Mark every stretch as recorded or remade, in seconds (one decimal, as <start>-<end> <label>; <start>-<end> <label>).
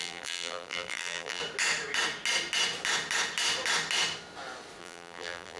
0.0-1.4 remade; 1.4-4.8 recorded; 4.8-5.6 remade